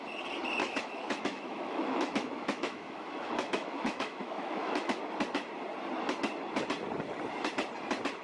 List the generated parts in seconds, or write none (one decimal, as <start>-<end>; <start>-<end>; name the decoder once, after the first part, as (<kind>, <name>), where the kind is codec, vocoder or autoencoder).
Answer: 0.6-5.0 (autoencoder, DAC-VAE)